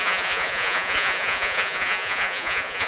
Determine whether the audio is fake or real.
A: fake